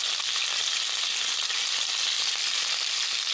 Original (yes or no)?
yes